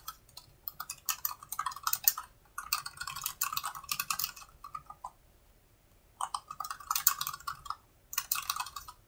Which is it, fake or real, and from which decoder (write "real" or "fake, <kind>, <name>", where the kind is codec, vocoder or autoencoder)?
real